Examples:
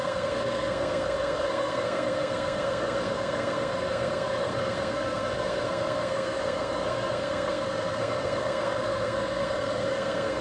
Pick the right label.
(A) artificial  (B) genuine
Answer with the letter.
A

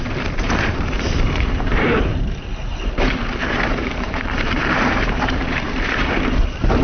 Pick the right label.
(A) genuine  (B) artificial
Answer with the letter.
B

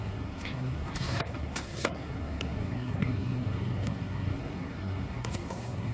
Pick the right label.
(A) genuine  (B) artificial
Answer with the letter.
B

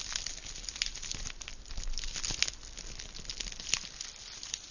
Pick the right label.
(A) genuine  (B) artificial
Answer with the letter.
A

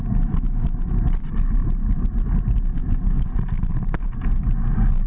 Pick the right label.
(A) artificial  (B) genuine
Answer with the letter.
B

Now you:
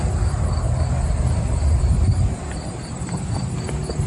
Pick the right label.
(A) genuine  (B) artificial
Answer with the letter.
A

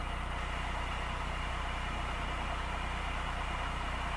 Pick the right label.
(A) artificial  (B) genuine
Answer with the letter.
B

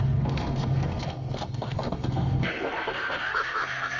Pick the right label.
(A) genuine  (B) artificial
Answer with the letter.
B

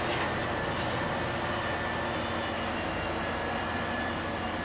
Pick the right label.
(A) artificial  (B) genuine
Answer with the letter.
B